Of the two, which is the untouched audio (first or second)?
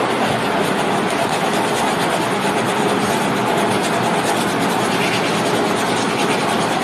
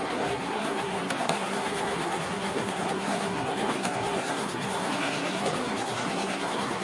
first